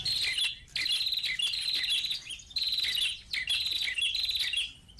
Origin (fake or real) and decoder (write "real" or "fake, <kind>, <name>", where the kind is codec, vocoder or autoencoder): real